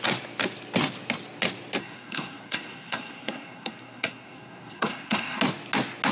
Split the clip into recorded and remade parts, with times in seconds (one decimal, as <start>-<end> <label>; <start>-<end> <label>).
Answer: 0.0-1.8 recorded; 1.8-5.4 remade; 5.4-6.1 recorded